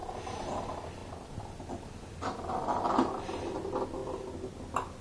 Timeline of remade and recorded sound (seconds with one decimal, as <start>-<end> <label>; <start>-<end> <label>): 0.0-5.0 recorded